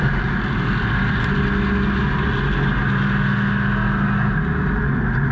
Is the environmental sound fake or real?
real